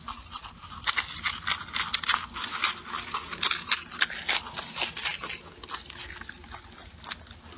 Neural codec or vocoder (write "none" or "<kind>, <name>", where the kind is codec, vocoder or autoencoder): none